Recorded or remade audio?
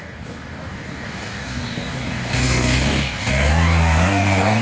remade